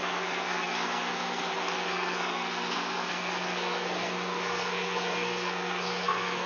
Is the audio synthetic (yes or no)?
yes